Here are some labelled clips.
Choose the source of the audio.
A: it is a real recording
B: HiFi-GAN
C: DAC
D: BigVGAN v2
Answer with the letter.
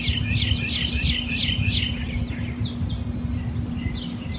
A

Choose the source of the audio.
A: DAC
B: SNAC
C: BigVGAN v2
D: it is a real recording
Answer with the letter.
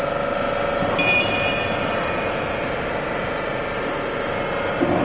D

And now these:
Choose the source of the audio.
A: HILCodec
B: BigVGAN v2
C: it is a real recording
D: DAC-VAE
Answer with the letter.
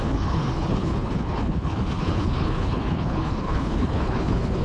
A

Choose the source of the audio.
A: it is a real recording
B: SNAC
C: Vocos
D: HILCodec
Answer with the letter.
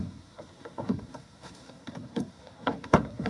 B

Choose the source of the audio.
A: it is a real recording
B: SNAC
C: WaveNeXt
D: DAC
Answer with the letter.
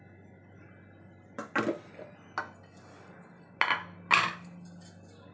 A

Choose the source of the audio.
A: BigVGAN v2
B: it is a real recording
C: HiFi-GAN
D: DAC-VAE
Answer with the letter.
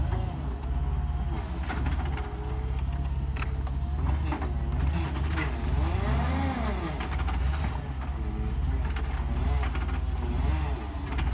B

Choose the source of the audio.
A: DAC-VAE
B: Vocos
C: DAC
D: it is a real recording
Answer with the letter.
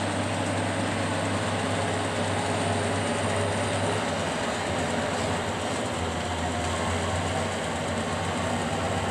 D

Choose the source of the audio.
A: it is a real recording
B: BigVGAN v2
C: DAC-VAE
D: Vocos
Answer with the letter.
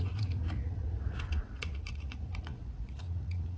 D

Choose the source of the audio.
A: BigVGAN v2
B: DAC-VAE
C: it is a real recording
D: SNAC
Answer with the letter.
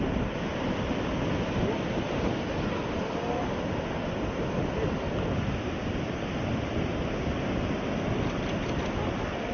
C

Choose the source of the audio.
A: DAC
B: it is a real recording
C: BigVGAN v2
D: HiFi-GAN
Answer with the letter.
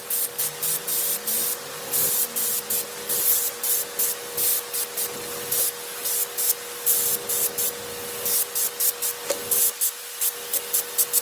B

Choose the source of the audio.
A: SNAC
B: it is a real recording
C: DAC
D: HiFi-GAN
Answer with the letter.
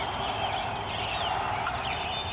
B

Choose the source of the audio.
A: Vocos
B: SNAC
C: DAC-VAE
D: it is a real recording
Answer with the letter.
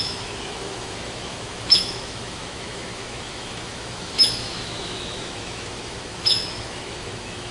C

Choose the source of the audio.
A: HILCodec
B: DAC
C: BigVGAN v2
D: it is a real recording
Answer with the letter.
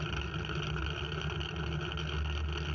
D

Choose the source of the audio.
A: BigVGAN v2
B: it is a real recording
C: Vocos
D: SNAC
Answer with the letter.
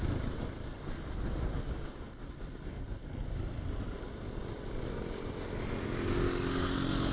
B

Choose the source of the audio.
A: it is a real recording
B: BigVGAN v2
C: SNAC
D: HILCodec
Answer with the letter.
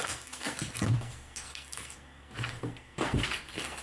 C